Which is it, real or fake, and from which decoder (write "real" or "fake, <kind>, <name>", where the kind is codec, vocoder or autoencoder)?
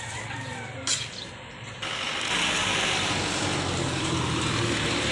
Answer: real